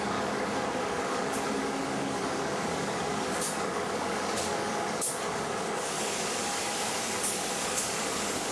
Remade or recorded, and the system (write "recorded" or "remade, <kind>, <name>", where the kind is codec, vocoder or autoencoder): remade, codec, DAC